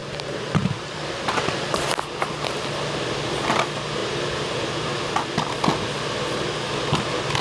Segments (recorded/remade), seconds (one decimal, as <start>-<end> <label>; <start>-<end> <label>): 0.0-1.8 remade; 1.8-4.0 recorded; 4.0-5.2 remade; 5.2-7.4 recorded